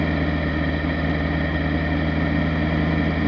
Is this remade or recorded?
recorded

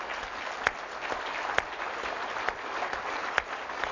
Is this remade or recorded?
recorded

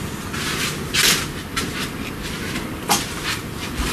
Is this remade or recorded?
recorded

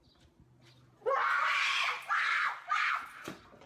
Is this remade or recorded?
recorded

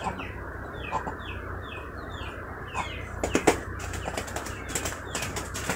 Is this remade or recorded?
recorded